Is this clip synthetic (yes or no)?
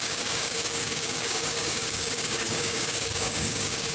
yes